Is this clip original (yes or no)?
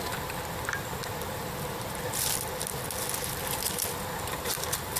yes